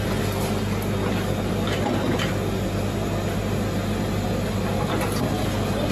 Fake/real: real